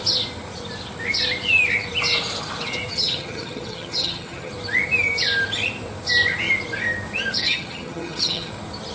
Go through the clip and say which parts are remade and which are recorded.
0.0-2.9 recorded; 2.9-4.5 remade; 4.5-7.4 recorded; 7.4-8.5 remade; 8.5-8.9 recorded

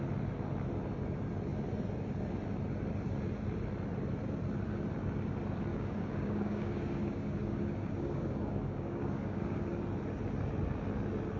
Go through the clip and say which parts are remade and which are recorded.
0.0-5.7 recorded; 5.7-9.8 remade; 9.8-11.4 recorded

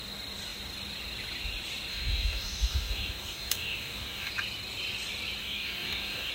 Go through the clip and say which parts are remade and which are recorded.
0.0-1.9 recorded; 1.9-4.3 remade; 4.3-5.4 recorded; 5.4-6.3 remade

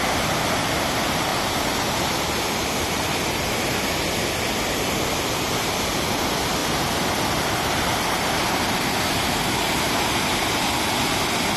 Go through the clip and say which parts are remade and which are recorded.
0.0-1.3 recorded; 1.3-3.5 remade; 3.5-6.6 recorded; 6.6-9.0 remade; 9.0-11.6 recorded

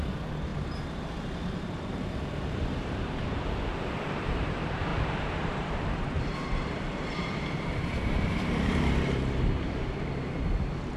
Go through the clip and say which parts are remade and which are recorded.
0.0-0.5 remade; 0.5-1.6 recorded; 1.6-11.0 remade

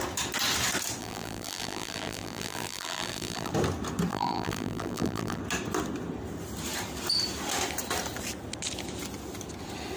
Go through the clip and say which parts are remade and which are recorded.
0.0-1.0 recorded; 1.0-3.5 remade; 3.5-4.1 recorded; 4.1-5.4 remade; 5.4-10.0 recorded

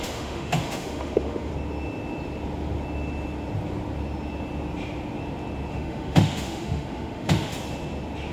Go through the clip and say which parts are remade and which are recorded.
0.0-1.5 remade; 1.5-5.7 recorded; 5.7-7.5 remade; 7.5-8.3 recorded